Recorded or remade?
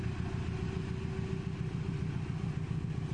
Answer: recorded